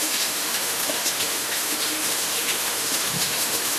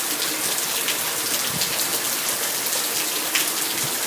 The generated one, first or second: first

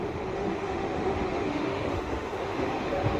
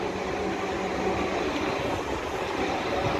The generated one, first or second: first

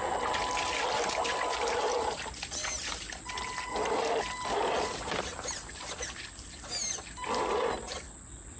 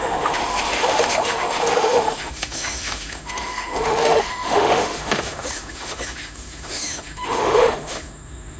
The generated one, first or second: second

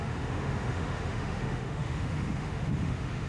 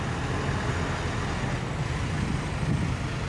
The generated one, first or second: first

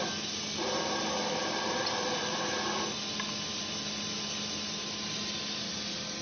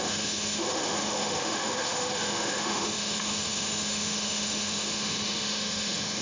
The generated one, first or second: second